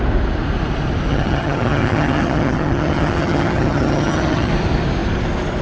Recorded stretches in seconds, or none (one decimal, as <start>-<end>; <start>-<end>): 0.0-1.1; 4.5-5.6